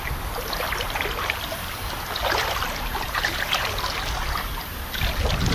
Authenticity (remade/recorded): recorded